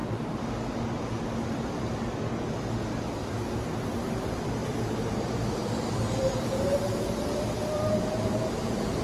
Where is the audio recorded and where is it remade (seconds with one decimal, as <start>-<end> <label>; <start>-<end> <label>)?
0.0-0.5 remade; 0.5-4.6 recorded; 4.6-8.5 remade; 8.5-9.0 recorded